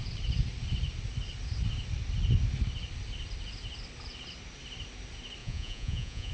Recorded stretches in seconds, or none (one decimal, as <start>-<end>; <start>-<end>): 0.0-5.4